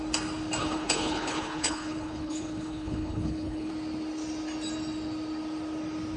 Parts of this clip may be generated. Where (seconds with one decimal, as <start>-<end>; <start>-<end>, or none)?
0.6-3.7